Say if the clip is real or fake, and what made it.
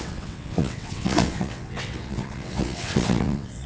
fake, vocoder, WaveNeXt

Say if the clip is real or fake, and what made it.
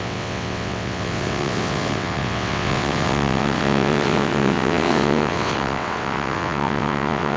fake, vocoder, WaveNeXt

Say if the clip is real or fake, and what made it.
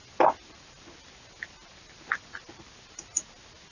real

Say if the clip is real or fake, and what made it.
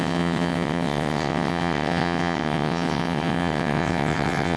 fake, vocoder, WaveNeXt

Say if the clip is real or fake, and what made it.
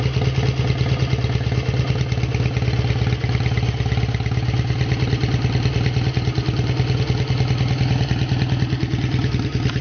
real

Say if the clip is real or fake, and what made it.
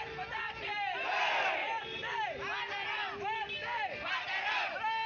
real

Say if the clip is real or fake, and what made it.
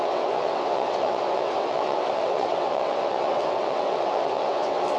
fake, vocoder, WaveNeXt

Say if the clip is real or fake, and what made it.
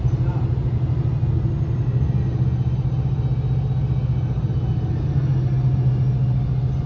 real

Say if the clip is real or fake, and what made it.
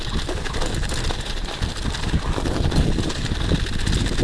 real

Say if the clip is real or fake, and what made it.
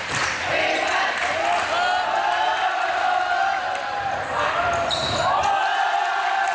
real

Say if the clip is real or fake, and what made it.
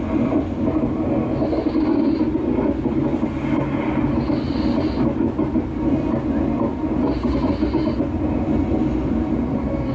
real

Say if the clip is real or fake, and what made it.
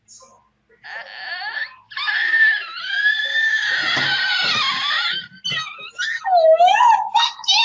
real